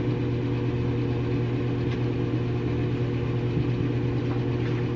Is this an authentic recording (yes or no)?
yes